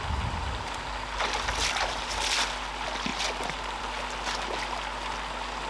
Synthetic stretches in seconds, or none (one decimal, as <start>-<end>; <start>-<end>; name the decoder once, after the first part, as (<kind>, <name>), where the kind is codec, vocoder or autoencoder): none